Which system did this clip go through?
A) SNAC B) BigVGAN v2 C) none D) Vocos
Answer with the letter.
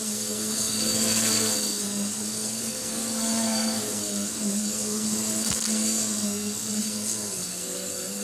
A